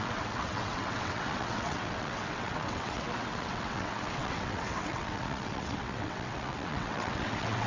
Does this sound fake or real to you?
fake